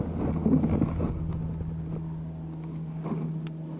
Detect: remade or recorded recorded